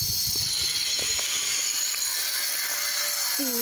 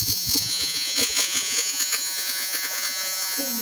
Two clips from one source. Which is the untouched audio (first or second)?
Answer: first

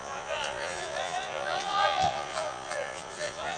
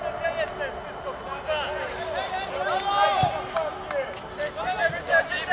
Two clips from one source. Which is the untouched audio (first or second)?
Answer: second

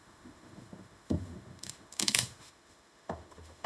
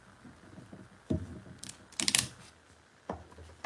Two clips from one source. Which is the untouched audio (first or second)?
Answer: second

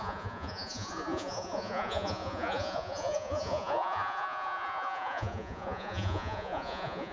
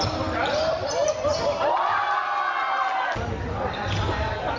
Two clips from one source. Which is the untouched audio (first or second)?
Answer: second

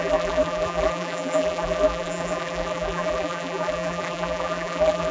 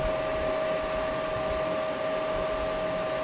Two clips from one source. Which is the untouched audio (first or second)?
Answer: second